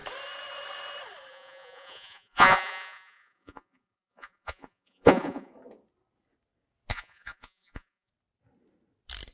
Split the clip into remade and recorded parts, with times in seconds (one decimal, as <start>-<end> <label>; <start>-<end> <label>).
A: 0.0-1.3 recorded; 1.3-5.5 remade; 5.5-6.9 recorded; 6.9-8.1 remade; 8.1-9.3 recorded